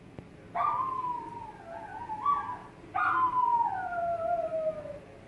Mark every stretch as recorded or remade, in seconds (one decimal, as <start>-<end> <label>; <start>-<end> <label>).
0.0-5.3 recorded